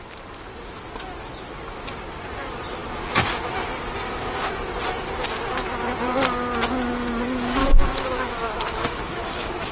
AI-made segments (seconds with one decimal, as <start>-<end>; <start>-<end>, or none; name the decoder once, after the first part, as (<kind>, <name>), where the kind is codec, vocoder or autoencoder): 7.6-9.7 (autoencoder, DAC-VAE)